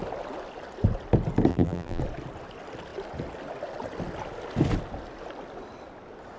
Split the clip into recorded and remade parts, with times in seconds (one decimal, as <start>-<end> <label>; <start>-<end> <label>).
0.0-1.5 recorded; 1.5-2.0 remade; 2.0-6.4 recorded